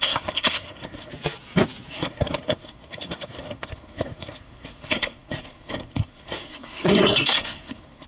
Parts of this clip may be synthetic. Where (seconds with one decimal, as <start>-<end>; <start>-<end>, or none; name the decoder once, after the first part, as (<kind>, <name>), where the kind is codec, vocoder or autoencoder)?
0.0-1.1 (codec, SNAC); 1.9-8.1